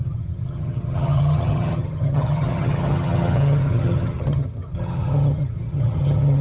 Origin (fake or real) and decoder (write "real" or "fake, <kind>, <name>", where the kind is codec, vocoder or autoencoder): fake, vocoder, HiFi-GAN